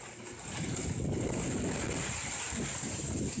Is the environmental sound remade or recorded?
recorded